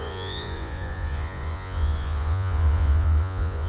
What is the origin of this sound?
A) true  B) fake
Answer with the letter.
B